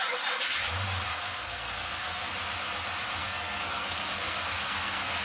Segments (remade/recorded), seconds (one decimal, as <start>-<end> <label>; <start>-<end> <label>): 0.0-1.1 recorded; 1.1-2.3 remade; 2.3-3.2 recorded; 3.2-5.2 remade